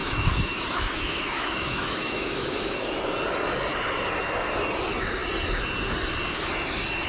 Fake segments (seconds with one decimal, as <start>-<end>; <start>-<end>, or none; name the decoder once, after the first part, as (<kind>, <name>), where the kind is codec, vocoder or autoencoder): 0.0-3.0 (autoencoder, DAC-VAE)